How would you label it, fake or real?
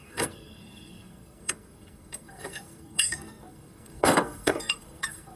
fake